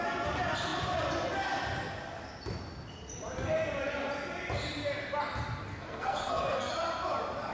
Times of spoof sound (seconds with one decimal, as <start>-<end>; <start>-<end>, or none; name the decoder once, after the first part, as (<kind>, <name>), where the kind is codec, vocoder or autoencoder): 5.7-6.7 (codec, SNAC)